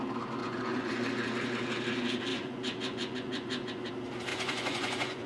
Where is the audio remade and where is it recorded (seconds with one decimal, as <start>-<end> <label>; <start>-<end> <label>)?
0.0-0.4 recorded; 0.4-0.9 remade; 0.9-2.3 recorded; 2.3-3.9 remade; 3.9-4.3 recorded; 4.3-5.3 remade